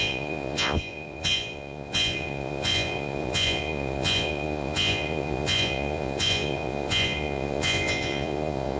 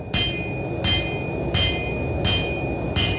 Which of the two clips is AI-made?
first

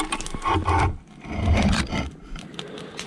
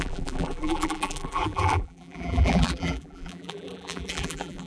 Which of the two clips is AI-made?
second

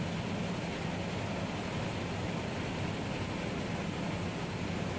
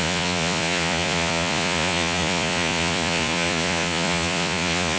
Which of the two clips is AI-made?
second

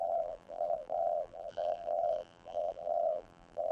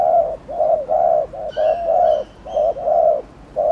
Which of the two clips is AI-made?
first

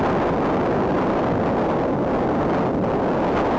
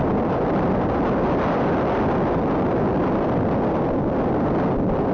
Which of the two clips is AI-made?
second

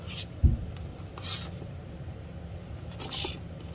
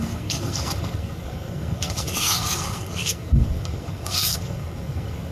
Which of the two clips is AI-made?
second